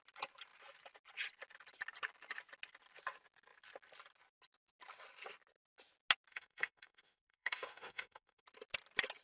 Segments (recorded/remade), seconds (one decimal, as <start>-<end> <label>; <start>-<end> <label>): 0.0-6.3 recorded; 6.3-8.4 remade; 8.4-9.2 recorded